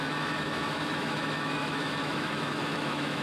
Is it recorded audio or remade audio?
remade